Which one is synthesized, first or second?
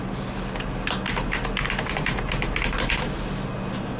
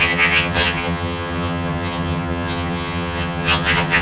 second